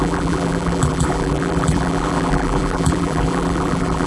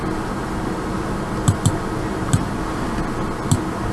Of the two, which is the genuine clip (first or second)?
second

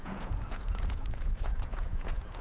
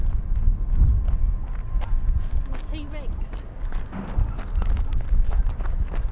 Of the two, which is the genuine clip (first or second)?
second